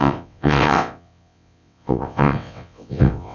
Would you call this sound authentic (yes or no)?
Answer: no